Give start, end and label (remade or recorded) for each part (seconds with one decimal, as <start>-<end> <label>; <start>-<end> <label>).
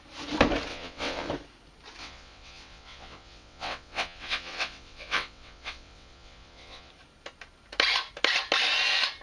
0.0-0.7 recorded; 0.7-1.3 remade; 1.3-2.0 recorded; 2.0-6.9 remade; 6.9-9.2 recorded